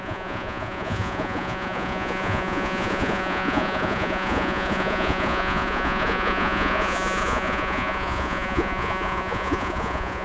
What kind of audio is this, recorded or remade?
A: remade